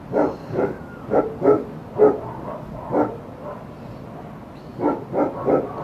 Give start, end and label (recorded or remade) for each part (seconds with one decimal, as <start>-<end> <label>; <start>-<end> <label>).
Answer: 0.0-0.4 recorded; 0.4-1.2 remade; 1.2-5.8 recorded